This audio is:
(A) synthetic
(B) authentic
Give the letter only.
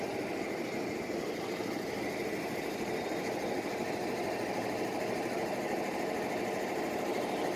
B